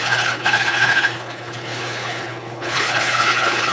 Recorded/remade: remade